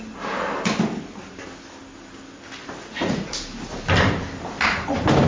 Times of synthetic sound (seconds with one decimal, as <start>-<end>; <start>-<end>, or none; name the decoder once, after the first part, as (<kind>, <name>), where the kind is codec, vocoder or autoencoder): 2.6-3.3 (vocoder, Vocos)